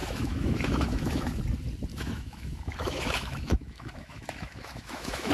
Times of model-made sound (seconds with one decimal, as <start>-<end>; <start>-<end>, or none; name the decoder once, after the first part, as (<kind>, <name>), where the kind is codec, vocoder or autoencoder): 0.0-1.4 (autoencoder, DAC-VAE); 1.9-5.3